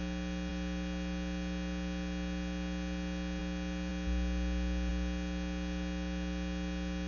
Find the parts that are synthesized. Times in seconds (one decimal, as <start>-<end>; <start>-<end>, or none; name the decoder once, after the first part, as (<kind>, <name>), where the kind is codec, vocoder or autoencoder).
none